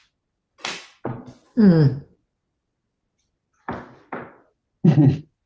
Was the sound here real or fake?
real